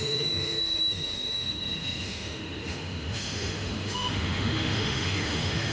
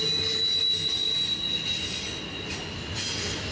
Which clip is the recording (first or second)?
second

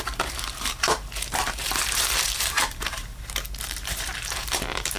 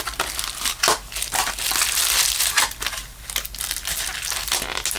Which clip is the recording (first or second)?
second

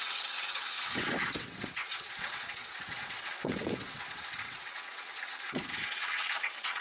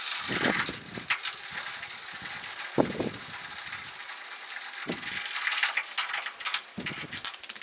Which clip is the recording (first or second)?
second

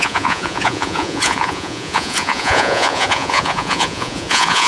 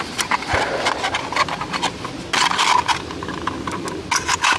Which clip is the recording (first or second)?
second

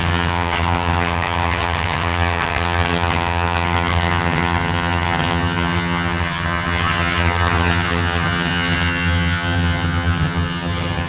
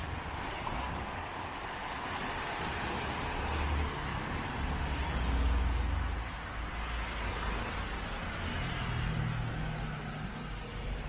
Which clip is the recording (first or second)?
second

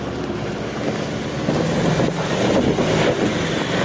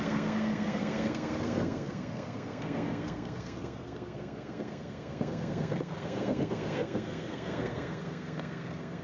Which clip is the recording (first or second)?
first